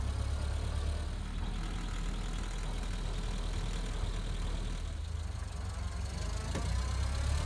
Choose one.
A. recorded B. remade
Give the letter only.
A